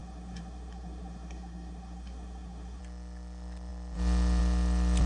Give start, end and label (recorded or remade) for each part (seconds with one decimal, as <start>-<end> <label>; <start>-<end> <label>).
0.0-2.8 remade; 2.8-5.1 recorded